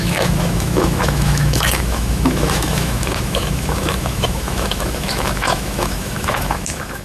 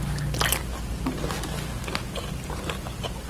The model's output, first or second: first